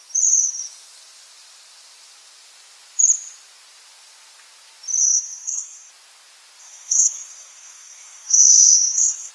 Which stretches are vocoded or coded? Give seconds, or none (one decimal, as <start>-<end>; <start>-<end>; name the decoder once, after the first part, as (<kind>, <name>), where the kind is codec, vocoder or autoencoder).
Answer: 5.0-5.9 (codec, SNAC); 6.6-9.3